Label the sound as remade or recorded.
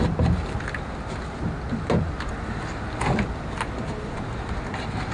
recorded